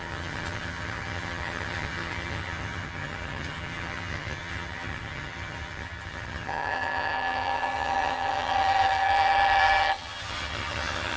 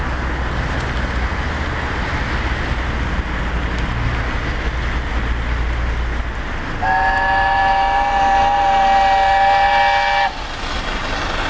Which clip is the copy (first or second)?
first